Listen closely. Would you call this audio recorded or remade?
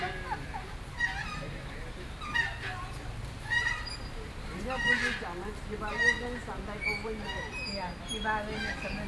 recorded